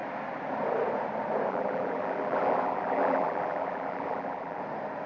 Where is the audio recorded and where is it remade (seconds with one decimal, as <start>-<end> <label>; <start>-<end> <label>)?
0.0-1.5 recorded; 1.5-4.6 remade; 4.6-5.1 recorded